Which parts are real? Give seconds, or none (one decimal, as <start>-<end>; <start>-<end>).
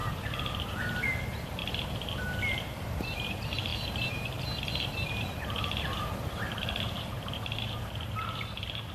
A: 1.6-2.6; 3.7-6.1